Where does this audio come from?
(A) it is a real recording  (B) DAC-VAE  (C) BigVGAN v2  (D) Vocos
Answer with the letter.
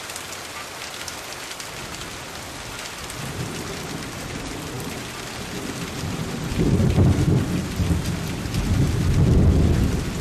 A